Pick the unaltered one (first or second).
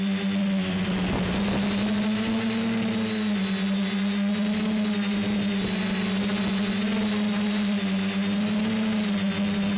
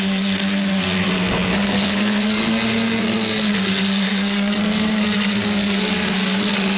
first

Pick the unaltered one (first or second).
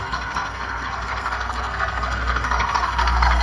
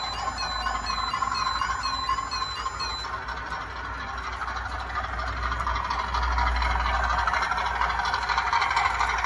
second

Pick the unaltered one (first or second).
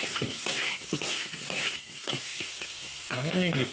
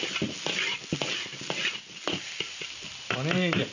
second